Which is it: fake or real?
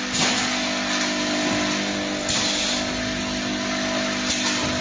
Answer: real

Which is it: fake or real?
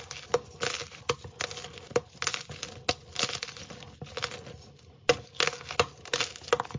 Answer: real